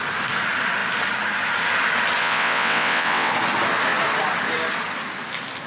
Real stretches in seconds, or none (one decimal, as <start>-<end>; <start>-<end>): 0.0-2.2; 3.3-5.7